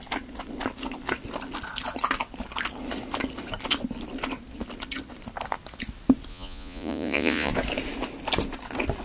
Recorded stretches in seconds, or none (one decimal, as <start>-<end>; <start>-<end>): 0.0-6.3; 7.5-9.0